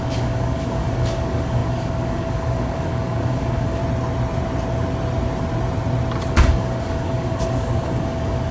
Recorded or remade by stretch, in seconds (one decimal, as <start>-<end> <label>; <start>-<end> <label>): 0.0-3.8 remade; 3.8-6.3 recorded; 6.3-8.5 remade